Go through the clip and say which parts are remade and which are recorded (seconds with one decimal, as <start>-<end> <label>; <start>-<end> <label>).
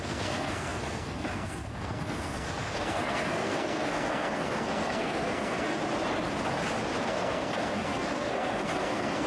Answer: 0.0-5.8 remade; 5.8-7.0 recorded; 7.0-9.3 remade